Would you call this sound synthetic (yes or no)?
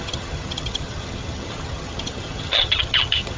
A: yes